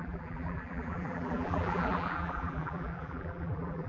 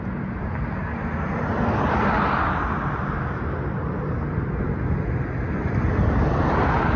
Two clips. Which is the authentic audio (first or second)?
second